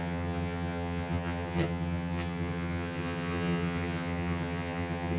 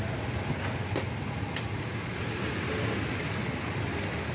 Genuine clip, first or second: second